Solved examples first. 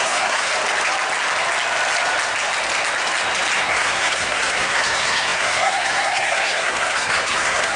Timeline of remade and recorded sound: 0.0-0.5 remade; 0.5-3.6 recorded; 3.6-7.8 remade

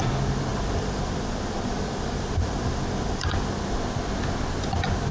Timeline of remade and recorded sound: 0.0-0.5 recorded; 0.5-3.6 remade; 3.6-5.1 recorded

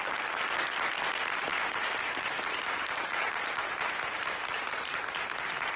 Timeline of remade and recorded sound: 0.0-1.5 recorded; 1.5-5.0 remade; 5.0-5.8 recorded

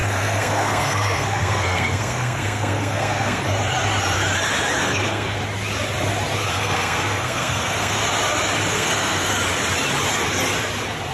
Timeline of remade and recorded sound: 0.0-3.4 remade; 3.4-4.8 recorded; 4.8-5.4 remade; 5.4-6.5 recorded; 6.5-8.0 remade; 8.0-8.7 recorded; 8.7-9.3 remade; 9.3-11.1 recorded